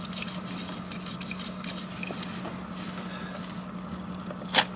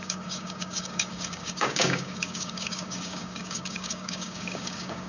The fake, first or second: second